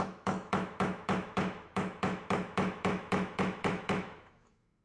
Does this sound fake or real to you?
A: fake